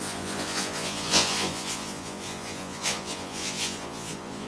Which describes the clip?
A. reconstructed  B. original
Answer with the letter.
A